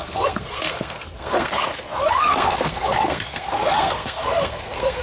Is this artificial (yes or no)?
yes